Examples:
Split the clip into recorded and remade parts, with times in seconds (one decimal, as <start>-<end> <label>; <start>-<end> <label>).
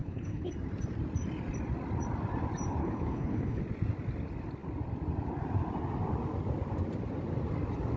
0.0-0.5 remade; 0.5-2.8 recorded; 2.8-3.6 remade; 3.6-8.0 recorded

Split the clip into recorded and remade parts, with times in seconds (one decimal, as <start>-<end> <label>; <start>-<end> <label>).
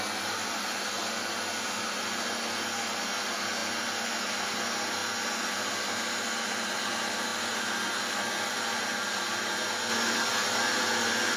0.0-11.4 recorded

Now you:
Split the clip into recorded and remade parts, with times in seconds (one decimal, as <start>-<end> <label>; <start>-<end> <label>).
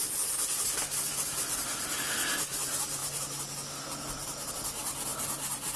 0.0-5.8 recorded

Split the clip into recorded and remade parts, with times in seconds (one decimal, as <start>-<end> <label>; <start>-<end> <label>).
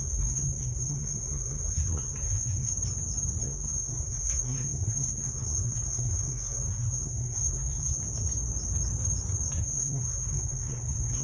0.0-2.7 remade; 2.7-3.4 recorded; 3.4-8.0 remade; 8.0-9.5 recorded; 9.5-11.2 remade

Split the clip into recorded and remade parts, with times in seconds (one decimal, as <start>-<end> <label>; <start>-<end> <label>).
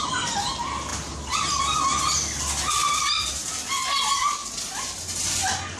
0.0-0.9 recorded; 0.9-1.6 remade; 1.6-2.9 recorded; 2.9-3.5 remade; 3.5-5.8 recorded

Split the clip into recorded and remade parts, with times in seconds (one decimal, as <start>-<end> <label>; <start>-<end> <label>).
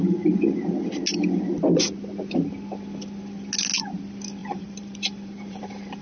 0.0-4.4 recorded; 4.4-6.0 remade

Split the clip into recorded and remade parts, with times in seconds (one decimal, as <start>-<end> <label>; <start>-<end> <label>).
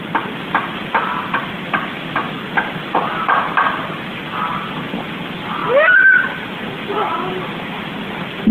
0.0-8.5 recorded